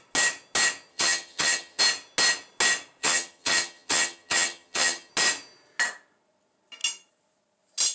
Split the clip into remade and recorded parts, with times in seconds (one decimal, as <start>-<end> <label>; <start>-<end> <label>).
0.0-0.9 recorded; 0.9-1.8 remade; 1.8-3.0 recorded; 3.0-5.1 remade; 5.1-7.9 recorded

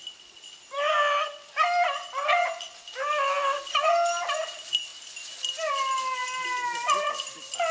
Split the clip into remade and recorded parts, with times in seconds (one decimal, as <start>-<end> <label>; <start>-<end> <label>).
0.0-7.7 recorded

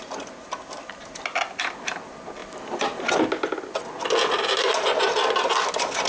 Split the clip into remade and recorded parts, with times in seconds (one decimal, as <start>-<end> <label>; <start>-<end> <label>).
0.0-6.1 recorded